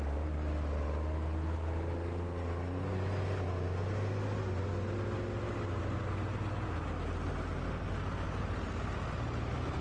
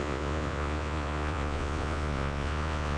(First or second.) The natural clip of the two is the first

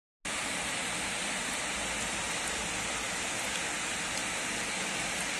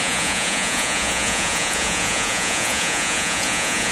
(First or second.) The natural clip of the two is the first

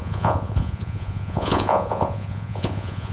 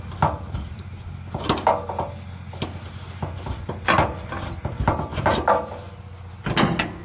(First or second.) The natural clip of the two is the second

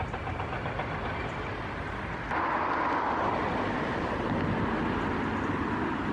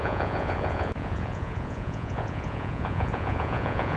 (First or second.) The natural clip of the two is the first